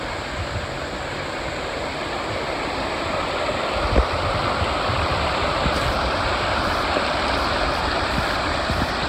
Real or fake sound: real